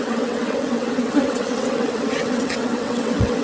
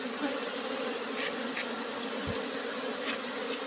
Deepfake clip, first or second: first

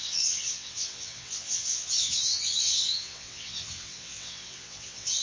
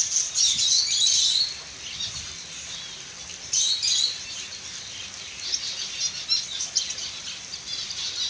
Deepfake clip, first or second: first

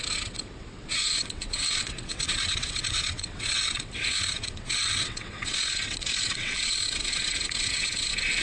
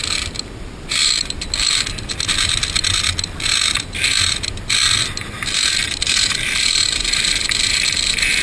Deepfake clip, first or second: first